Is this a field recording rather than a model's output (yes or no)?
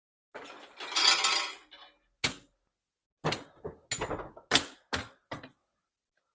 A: yes